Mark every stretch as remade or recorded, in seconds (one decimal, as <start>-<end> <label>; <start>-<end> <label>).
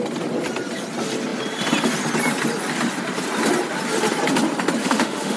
0.0-4.8 recorded; 4.8-5.4 remade